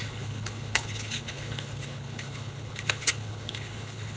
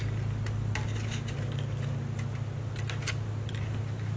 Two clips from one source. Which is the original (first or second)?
second